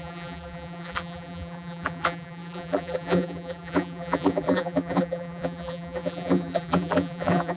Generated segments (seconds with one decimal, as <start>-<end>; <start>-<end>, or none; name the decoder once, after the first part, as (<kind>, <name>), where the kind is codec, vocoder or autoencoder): 0.0-7.6 (vocoder, BigVGAN v2)